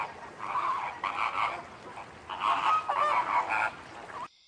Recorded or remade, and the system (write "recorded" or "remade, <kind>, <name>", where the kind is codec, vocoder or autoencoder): recorded